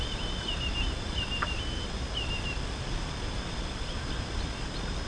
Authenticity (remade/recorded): recorded